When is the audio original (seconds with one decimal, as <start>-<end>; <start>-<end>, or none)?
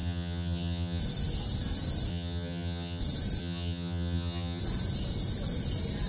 1.0-2.1; 3.0-3.4; 4.6-6.1